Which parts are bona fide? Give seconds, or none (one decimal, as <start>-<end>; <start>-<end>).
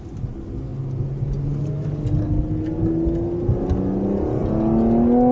0.0-5.3